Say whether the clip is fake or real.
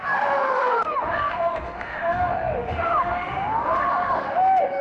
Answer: fake